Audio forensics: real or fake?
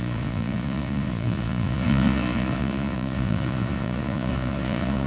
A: fake